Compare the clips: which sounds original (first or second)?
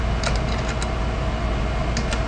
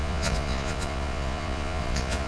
first